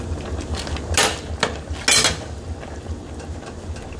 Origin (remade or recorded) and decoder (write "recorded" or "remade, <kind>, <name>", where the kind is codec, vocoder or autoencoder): recorded